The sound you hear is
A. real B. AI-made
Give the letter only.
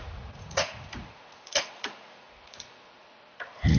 B